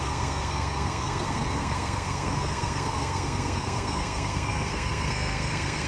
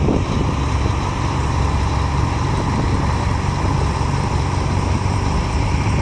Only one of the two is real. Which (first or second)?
second